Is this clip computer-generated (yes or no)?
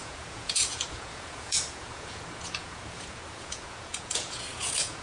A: yes